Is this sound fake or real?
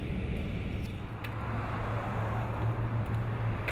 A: real